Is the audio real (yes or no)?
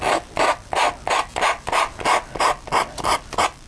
yes